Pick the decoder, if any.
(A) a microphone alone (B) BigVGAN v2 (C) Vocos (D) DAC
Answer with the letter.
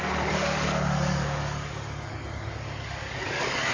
D